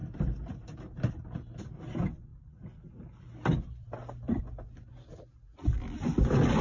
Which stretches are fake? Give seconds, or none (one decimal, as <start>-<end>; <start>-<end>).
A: 0.0-1.1; 2.3-4.4